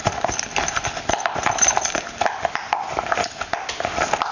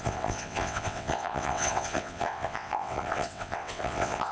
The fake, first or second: second